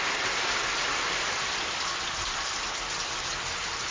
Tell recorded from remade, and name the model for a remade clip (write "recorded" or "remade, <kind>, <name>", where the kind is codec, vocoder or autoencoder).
remade, vocoder, BigVGAN v2